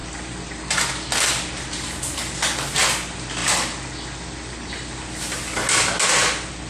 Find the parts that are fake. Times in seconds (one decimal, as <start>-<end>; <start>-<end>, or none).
none